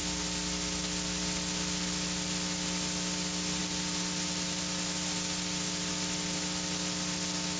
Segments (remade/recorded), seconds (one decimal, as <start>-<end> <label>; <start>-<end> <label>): 0.0-7.6 recorded